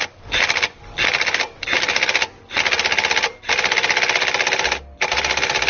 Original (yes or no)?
yes